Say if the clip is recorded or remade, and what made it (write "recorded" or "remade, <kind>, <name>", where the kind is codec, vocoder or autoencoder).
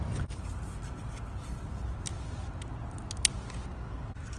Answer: recorded